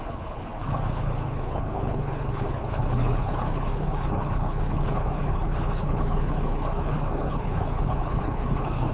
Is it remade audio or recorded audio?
remade